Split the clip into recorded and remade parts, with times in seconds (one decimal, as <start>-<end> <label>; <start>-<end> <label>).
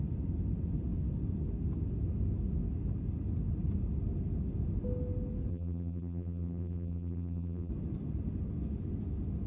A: 0.0-5.5 recorded; 5.5-7.7 remade; 7.7-9.5 recorded